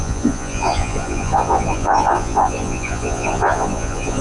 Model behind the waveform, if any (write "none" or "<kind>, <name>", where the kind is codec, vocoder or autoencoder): vocoder, Vocos